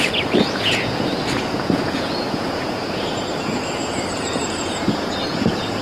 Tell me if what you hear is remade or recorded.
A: remade